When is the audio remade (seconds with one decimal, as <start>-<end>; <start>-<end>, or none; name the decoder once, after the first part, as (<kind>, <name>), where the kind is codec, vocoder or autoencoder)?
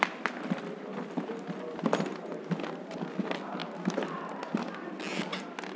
none